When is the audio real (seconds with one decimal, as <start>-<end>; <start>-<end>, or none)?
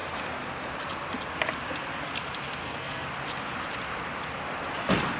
0.0-2.6; 3.1-5.2